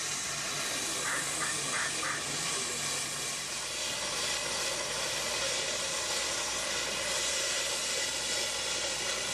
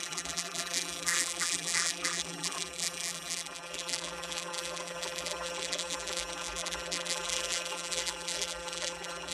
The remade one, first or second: second